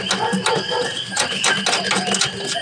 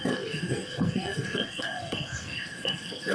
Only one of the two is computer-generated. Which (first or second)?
second